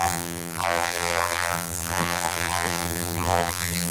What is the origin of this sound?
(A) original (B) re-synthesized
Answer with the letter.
B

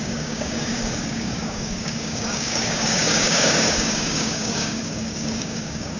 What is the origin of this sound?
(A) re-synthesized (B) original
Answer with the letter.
A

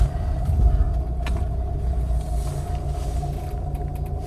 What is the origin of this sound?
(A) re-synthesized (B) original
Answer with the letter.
B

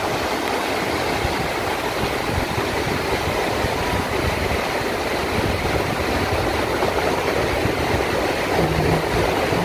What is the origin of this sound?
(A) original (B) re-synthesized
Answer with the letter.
A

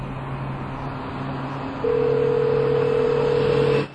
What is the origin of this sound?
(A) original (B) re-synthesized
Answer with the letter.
A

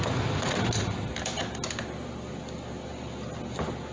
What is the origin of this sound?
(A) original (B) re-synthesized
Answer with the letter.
A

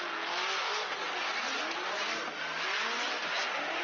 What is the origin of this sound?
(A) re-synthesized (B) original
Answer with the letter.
B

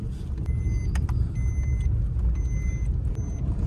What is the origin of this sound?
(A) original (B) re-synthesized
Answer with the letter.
A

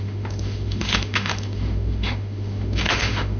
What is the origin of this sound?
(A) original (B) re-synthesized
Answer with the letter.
B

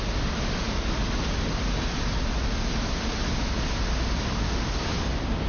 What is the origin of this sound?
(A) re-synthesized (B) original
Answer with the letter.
B